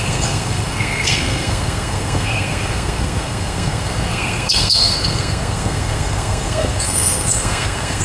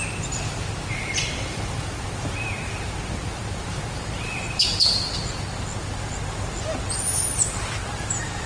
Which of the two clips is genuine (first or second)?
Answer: second